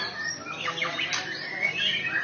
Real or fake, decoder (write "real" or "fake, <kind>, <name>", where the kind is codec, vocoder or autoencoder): real